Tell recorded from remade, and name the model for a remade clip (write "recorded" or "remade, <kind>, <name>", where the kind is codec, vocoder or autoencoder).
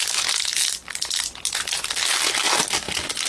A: recorded